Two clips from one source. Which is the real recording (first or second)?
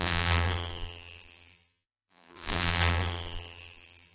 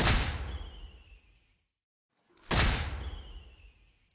second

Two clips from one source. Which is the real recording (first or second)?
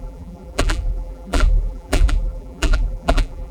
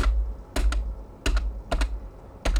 second